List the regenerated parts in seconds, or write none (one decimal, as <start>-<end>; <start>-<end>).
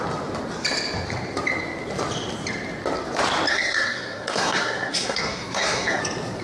3.5-6.0